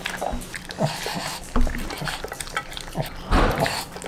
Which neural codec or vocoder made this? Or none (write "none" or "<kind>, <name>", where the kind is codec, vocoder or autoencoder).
none